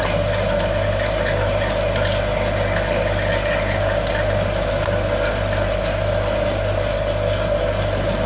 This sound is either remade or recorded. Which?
recorded